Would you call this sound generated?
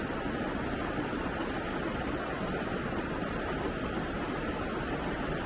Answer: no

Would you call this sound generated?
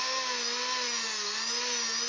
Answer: no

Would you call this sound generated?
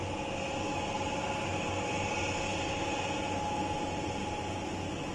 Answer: no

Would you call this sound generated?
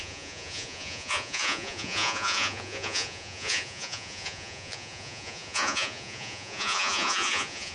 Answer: yes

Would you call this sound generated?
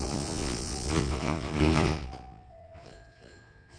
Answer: yes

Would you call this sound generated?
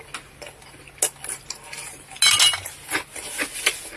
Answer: no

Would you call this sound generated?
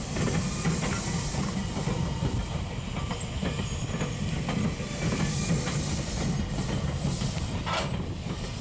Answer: no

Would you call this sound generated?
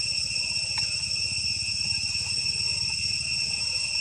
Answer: no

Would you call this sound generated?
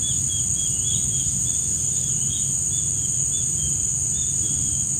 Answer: no